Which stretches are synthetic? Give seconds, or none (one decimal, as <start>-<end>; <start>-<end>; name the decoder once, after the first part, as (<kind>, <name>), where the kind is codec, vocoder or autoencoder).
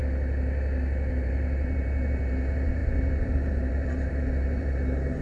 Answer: 1.1-5.2 (vocoder, BigVGAN v2)